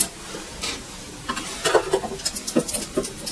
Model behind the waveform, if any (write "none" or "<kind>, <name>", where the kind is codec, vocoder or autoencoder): none